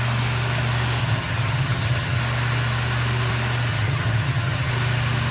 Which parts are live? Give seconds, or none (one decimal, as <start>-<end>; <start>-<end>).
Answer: 0.0-1.0; 2.2-3.7; 4.7-5.3